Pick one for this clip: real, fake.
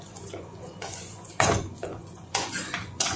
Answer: fake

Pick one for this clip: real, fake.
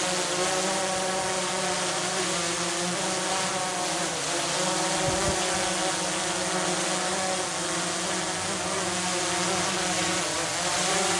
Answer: real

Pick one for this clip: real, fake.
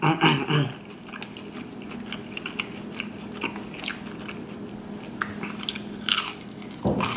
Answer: real